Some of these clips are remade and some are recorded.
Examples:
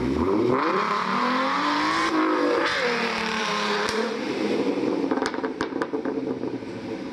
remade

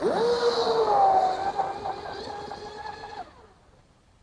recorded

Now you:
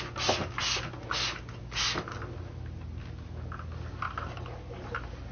recorded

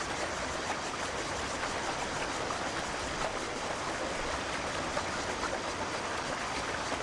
remade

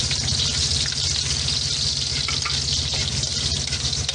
recorded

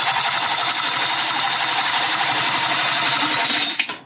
recorded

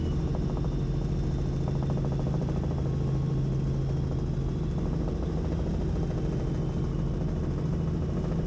recorded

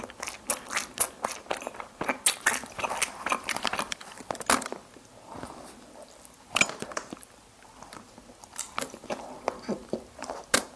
recorded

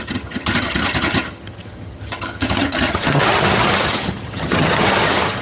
remade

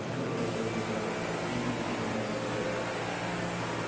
recorded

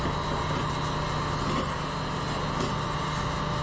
recorded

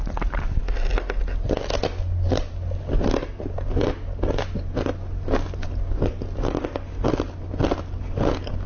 recorded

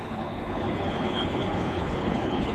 remade